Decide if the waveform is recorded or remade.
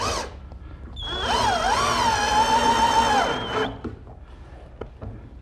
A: recorded